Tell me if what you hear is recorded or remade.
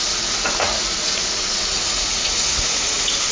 remade